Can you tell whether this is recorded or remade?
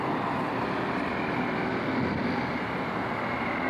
recorded